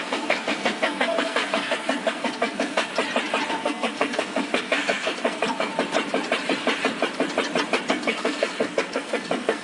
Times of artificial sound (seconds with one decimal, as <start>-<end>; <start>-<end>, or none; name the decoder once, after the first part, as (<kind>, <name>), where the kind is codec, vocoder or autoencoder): 0.0-2.9 (codec, SNAC); 3.5-5.7; 7.9-9.6